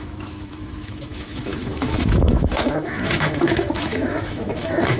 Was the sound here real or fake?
fake